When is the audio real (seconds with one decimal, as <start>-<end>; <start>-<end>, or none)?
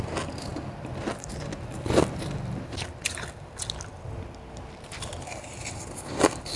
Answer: 0.0-6.6